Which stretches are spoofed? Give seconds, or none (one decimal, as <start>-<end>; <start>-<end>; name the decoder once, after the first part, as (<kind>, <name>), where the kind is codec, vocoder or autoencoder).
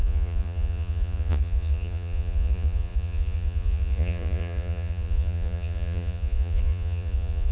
0.0-7.5 (vocoder, Vocos)